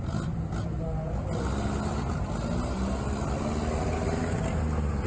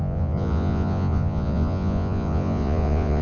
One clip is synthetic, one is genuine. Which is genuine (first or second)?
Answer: first